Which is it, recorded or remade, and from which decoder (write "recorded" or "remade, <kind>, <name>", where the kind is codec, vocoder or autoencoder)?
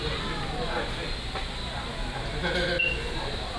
recorded